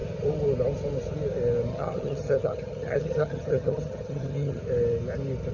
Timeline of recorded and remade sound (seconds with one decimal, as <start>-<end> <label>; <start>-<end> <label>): 0.0-1.7 recorded; 1.7-4.6 remade; 4.6-5.5 recorded